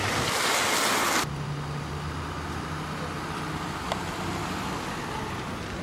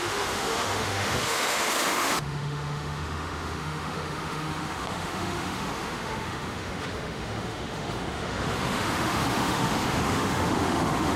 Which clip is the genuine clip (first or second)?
first